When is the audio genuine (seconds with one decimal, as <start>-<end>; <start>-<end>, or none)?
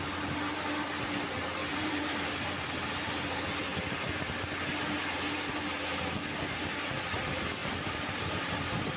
0.0-1.7; 2.3-7.6; 8.5-9.0